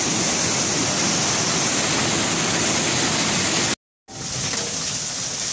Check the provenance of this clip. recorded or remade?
recorded